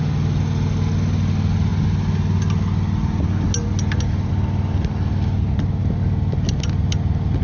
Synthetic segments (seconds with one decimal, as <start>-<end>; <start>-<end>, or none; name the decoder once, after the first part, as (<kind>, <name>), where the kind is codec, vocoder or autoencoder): none